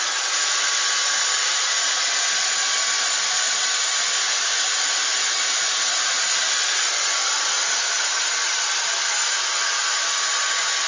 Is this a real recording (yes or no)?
yes